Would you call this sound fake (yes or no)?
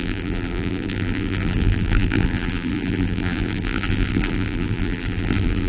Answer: yes